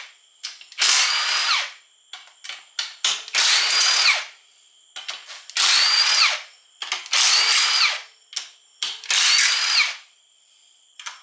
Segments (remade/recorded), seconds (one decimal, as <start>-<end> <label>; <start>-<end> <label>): 0.0-11.2 recorded